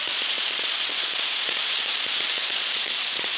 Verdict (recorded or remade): remade